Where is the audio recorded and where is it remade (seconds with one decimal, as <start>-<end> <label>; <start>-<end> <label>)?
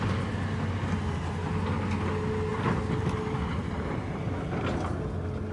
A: 0.0-5.5 recorded